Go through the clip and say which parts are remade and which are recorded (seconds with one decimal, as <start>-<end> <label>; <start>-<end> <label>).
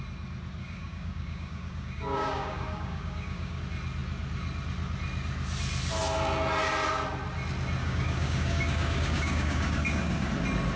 0.0-0.6 recorded; 0.6-3.6 remade; 3.6-7.8 recorded; 7.8-10.3 remade; 10.3-10.8 recorded